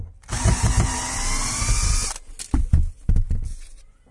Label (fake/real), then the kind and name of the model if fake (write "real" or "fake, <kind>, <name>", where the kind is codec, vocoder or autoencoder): real